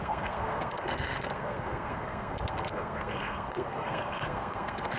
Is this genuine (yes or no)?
no